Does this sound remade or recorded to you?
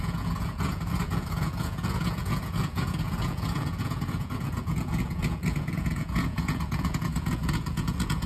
remade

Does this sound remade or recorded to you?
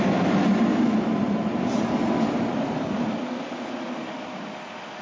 recorded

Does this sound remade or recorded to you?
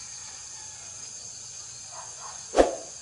remade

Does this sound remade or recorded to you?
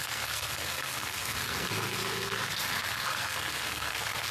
remade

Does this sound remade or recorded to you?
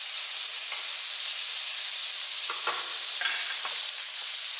recorded